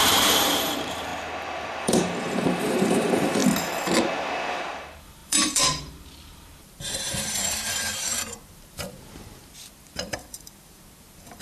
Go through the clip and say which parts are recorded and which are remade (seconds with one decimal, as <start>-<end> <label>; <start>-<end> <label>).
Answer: 0.0-1.1 remade; 1.1-1.8 recorded; 1.8-3.4 remade; 3.4-4.5 recorded; 4.5-11.4 remade